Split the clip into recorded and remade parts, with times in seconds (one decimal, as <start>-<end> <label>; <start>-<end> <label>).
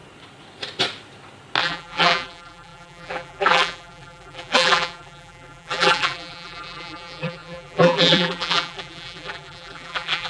0.0-1.6 recorded; 1.6-10.3 remade